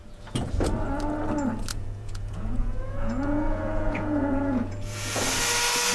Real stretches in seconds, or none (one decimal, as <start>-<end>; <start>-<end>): 0.5-1.7; 5.2-5.9